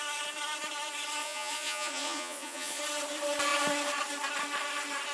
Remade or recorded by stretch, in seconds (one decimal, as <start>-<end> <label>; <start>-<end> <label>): 0.0-1.2 recorded; 1.2-2.8 remade; 2.8-5.1 recorded